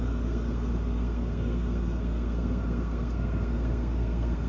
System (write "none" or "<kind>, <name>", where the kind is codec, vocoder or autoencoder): codec, SNAC